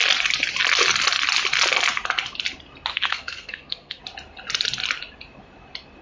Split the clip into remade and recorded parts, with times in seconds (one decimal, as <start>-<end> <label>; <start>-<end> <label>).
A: 0.0-2.9 recorded; 2.9-4.0 remade; 4.0-6.0 recorded